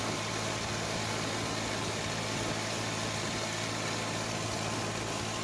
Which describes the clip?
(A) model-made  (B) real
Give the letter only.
B